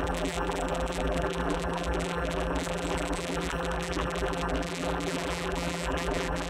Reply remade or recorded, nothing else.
remade